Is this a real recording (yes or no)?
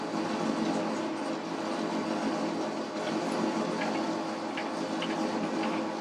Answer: yes